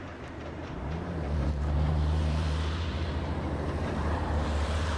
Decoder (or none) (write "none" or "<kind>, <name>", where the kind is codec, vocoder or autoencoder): vocoder, BigVGAN v2